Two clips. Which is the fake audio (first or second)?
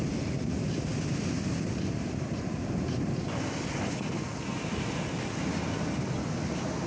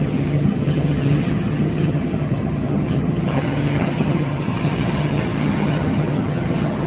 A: second